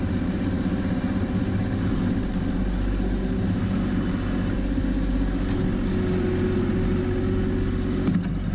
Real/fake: real